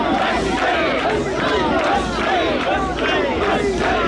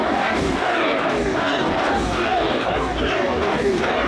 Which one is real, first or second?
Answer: first